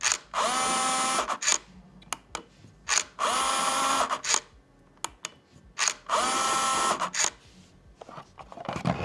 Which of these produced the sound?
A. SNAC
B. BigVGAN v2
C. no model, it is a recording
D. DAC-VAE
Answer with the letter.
C